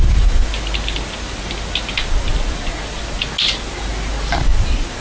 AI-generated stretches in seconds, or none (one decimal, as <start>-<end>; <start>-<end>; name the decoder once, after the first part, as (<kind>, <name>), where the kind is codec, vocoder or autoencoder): none